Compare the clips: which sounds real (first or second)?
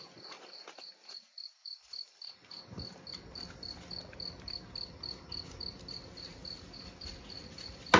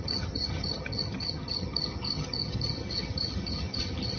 first